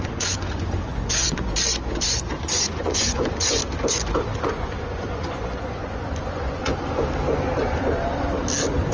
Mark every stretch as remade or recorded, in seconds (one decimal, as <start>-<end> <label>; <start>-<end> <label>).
0.0-3.6 remade; 3.6-4.4 recorded; 4.4-6.6 remade; 6.6-8.9 recorded